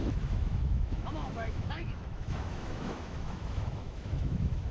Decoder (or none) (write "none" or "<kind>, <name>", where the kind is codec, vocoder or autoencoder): autoencoder, DAC-VAE